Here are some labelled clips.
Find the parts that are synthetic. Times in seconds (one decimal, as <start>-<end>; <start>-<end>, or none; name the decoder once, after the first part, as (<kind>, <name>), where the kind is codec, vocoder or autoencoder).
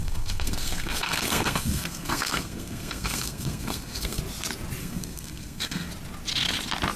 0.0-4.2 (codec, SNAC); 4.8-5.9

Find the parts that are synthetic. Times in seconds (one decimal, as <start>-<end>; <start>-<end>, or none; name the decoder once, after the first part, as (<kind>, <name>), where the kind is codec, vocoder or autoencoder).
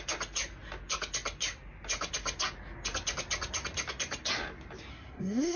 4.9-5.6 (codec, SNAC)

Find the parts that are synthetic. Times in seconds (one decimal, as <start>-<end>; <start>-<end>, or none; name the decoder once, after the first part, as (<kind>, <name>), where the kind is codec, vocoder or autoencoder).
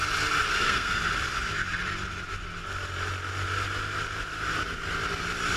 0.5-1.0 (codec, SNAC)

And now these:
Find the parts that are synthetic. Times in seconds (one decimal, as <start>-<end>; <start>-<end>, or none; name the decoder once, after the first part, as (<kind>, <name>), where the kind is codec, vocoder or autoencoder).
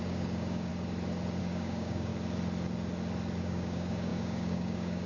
0.0-0.7 (codec, DAC); 1.4-2.1; 3.4-5.1